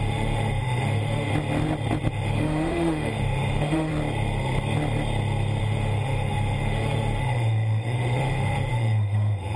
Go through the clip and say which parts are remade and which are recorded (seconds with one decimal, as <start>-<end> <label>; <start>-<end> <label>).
0.0-1.3 remade; 1.3-2.1 recorded; 2.1-3.9 remade; 3.9-5.6 recorded; 5.6-9.6 remade